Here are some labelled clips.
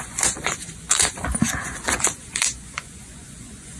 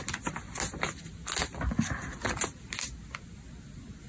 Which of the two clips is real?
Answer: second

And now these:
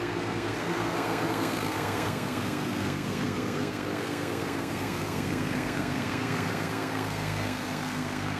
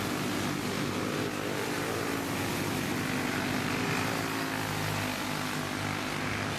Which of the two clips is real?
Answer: second